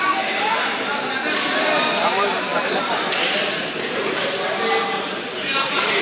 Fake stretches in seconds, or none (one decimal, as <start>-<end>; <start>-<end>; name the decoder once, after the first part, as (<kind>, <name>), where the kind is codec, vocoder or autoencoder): 0.0-0.9 (vocoder, BigVGAN v2); 2.0-6.0